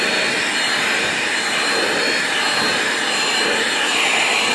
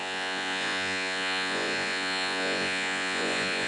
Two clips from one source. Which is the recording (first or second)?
first